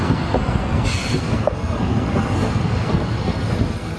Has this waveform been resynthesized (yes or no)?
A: yes